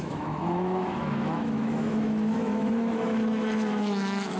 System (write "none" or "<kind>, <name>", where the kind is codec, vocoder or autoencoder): autoencoder, DAC-VAE